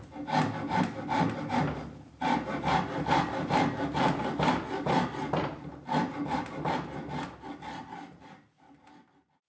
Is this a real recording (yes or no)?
yes